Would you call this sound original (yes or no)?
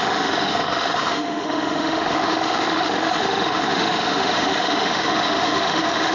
no